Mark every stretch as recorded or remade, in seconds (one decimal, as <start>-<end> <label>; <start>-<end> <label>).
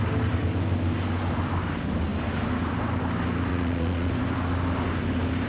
0.0-3.5 recorded; 3.5-4.1 remade; 4.1-5.5 recorded